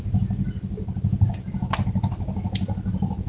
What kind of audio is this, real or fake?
real